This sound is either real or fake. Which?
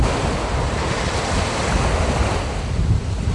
real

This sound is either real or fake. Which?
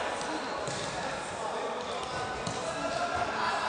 real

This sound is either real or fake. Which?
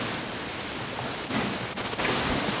real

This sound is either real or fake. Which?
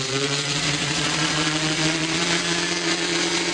fake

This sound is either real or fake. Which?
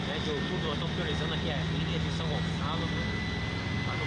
real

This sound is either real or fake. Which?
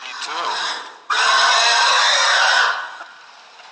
real